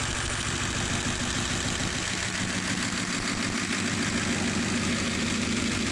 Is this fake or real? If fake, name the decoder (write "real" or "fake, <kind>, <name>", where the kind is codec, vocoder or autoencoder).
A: real